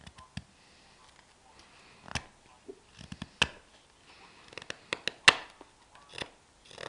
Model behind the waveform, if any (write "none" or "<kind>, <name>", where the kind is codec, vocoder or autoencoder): none